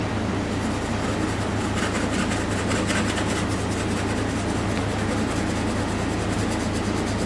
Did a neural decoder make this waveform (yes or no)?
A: no